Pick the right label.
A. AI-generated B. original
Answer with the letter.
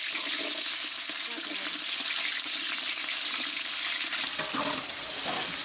B